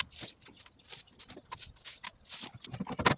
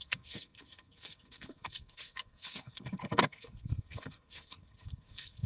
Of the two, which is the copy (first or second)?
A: second